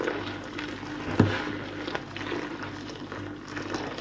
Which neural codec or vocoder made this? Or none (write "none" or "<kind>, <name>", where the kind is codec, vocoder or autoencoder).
none